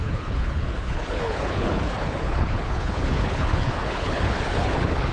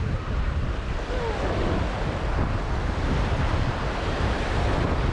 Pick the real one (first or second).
second